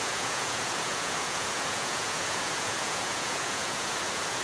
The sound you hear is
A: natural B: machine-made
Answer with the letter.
B